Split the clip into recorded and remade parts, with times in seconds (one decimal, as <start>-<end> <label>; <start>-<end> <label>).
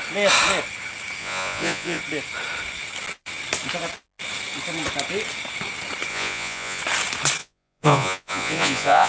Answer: 0.0-1.2 recorded; 1.2-2.0 remade; 2.0-6.1 recorded; 6.1-6.8 remade; 6.8-7.4 recorded; 7.4-9.1 remade